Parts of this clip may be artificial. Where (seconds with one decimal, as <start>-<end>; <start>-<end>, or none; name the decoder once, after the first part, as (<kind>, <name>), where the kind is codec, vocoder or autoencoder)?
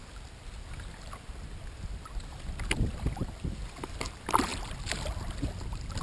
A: none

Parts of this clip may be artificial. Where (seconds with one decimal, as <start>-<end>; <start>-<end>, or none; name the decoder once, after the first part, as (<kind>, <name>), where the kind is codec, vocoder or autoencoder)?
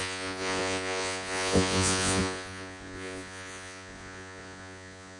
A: 0.0-5.2 (vocoder, Vocos)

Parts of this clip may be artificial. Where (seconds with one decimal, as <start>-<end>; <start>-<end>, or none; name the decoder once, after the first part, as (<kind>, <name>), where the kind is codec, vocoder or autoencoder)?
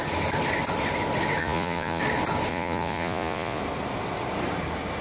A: 1.4-2.0 (vocoder, Vocos); 2.5-3.6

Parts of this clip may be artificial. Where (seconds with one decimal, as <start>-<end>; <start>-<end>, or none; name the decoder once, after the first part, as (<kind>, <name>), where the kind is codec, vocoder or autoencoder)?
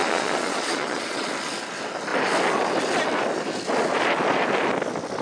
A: 0.0-1.3 (vocoder, Vocos)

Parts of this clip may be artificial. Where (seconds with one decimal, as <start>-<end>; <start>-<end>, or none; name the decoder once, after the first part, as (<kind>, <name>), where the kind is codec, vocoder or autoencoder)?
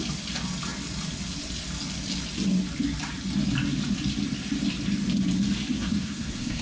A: 5.7-6.6 (codec, SNAC)